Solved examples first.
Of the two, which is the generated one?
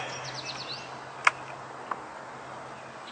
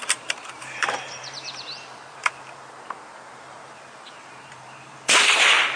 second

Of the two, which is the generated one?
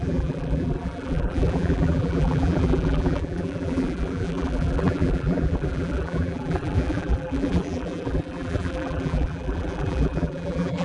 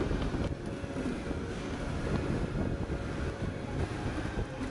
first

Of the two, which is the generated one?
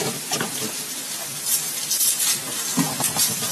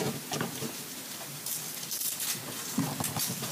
first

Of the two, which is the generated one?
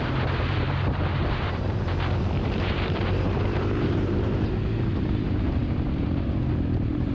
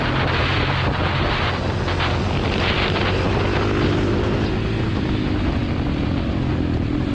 first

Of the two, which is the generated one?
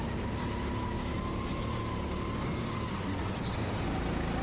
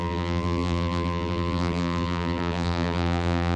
second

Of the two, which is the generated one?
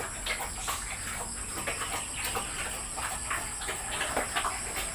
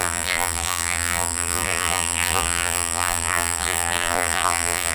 second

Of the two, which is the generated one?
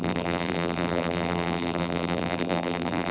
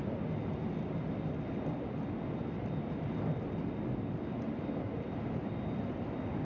first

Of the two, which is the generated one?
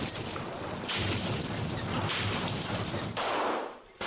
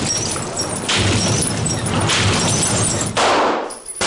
first